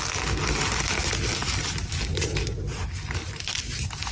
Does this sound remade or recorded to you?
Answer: recorded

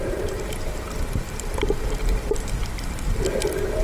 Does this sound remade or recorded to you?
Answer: remade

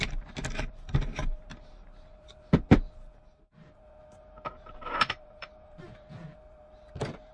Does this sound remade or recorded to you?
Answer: remade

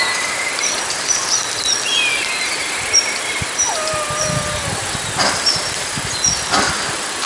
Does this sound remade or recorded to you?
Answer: remade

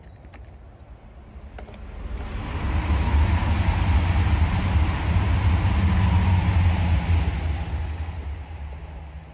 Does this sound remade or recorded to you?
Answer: recorded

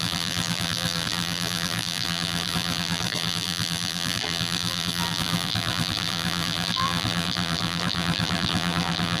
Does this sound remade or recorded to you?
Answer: remade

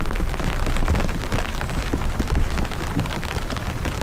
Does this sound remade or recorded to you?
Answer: recorded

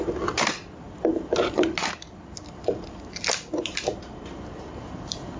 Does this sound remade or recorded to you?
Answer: recorded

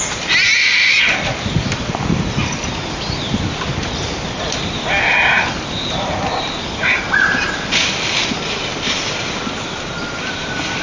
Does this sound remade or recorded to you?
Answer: remade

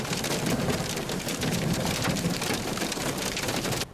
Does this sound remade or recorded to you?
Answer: remade